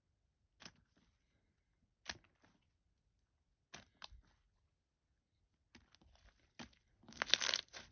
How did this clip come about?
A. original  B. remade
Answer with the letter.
A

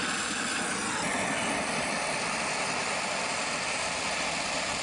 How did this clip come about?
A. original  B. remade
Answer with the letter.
A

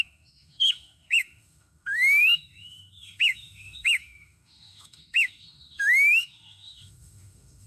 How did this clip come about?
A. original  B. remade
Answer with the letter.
B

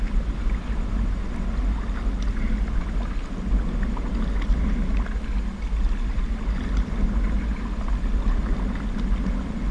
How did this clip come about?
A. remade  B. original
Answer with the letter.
B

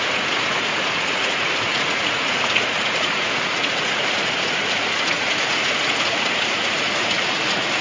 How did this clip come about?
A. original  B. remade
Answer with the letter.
B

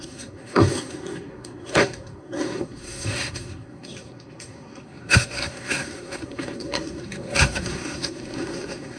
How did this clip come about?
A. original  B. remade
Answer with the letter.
B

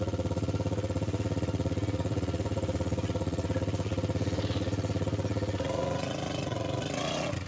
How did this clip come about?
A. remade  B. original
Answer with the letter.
A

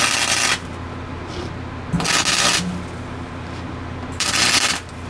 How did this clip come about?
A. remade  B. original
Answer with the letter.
B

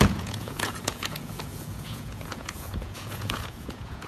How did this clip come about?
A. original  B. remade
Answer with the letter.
B